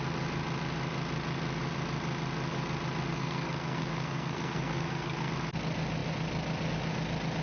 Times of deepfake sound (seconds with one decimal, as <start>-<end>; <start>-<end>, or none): 3.1-5.3

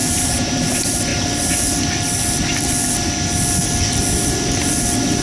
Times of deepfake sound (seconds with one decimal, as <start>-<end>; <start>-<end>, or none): 0.0-0.6